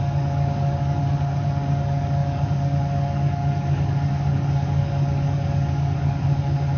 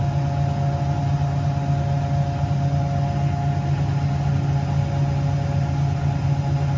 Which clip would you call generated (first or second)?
first